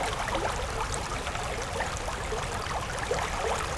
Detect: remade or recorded remade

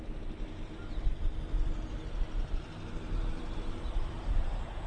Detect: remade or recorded remade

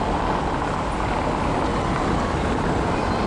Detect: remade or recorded recorded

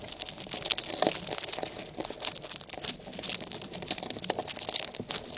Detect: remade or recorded recorded